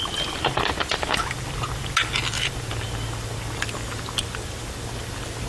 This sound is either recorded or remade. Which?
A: recorded